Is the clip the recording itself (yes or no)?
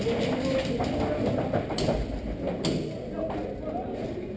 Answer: yes